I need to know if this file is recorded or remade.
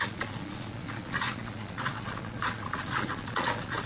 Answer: remade